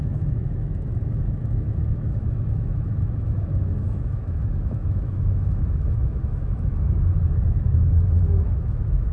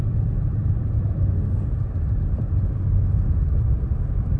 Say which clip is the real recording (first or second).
second